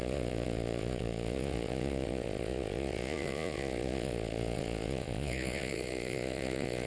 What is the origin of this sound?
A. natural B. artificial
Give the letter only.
B